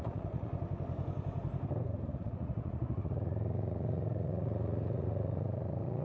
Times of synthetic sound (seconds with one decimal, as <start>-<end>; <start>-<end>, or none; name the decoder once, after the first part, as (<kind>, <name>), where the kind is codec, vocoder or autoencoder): 0.0-0.5 (vocoder, Vocos); 2.2-6.0